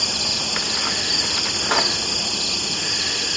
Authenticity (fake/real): real